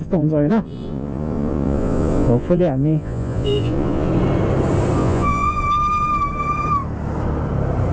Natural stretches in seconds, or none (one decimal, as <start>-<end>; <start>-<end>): 4.1-5.0; 5.6-7.9

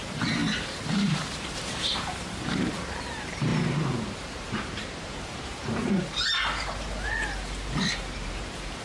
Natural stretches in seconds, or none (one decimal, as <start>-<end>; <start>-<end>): none